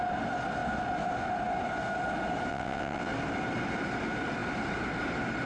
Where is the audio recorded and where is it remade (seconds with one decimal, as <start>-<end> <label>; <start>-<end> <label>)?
0.0-2.5 recorded; 2.5-3.1 remade; 3.1-5.5 recorded